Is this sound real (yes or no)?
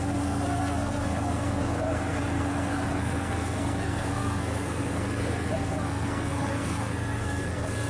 no